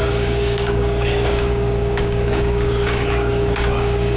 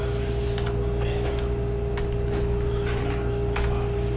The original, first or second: second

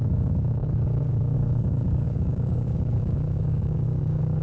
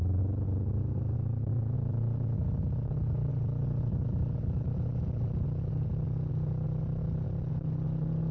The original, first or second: second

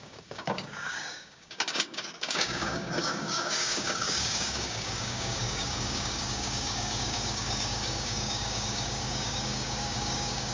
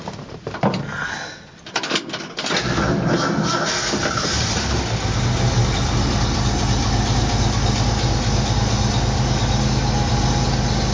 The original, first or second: second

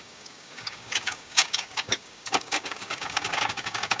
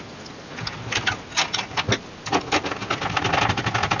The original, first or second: second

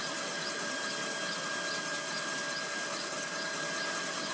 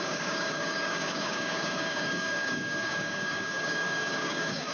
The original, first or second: first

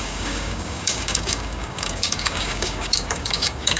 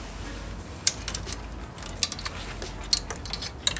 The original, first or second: second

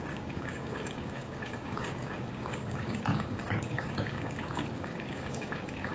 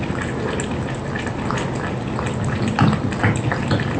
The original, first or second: second